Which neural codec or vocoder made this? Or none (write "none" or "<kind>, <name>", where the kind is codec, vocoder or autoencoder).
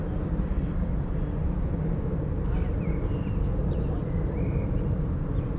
none